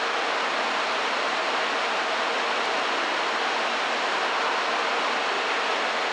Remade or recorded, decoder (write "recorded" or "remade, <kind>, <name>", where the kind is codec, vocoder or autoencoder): recorded